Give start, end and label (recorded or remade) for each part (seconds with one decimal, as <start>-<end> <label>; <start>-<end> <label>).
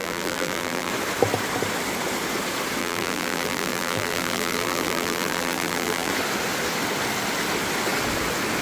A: 0.0-0.9 remade; 0.9-2.8 recorded; 2.8-6.1 remade; 6.1-8.6 recorded